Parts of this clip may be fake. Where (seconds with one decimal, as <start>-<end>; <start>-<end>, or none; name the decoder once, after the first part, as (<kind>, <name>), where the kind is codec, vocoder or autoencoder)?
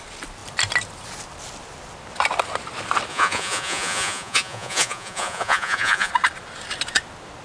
3.1-6.1 (vocoder, Vocos)